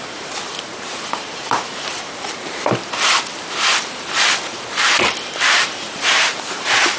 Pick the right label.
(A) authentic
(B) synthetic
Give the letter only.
B